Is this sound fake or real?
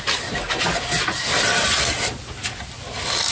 real